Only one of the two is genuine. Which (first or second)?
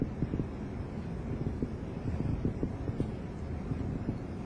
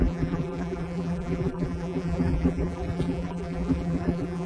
first